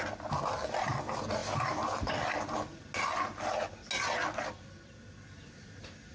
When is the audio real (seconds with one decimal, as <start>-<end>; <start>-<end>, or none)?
0.0-6.1